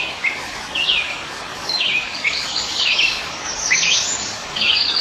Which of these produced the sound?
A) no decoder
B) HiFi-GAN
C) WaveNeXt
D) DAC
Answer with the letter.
D